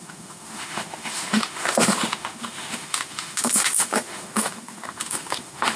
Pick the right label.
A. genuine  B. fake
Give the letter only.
B